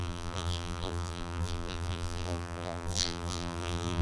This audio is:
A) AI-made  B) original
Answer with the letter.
A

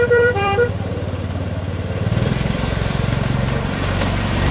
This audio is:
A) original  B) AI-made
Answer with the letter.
B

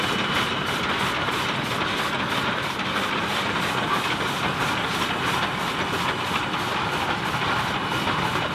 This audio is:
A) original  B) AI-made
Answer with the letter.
A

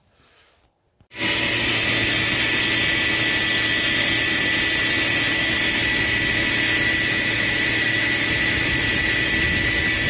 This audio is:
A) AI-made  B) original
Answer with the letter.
B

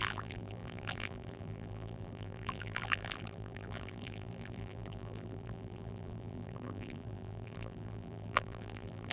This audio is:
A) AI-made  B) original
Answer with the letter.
A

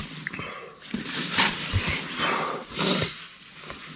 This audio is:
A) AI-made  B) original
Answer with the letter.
A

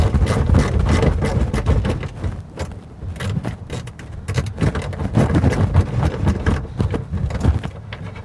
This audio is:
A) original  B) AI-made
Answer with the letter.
A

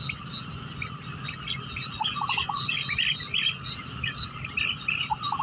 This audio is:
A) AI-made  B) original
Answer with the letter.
B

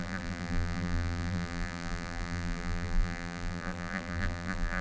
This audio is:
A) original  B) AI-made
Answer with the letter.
B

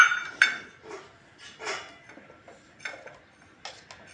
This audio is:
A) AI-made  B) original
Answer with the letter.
B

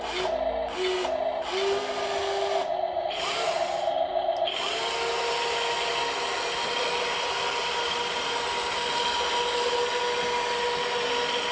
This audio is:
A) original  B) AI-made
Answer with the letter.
A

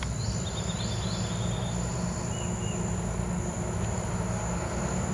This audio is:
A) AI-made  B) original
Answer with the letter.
B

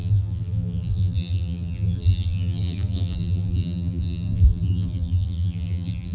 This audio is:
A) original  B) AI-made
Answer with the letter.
B